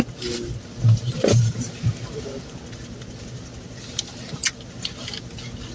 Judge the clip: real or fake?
real